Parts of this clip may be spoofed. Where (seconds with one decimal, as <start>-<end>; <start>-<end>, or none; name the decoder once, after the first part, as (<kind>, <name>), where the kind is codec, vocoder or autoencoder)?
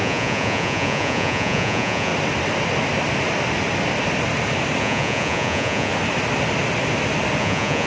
0.0-2.1 (vocoder, Vocos); 4.8-5.9; 7.4-7.9